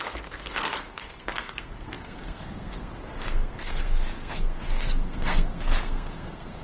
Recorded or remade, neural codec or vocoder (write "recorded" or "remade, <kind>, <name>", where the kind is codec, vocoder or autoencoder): remade, codec, SNAC